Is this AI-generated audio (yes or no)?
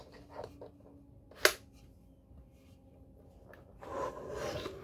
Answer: no